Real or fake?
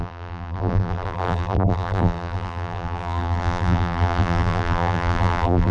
fake